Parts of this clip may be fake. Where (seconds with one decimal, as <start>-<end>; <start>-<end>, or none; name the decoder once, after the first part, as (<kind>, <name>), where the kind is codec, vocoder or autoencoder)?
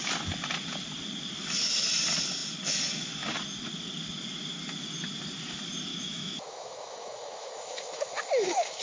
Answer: 5.9-8.8 (autoencoder, DAC-VAE)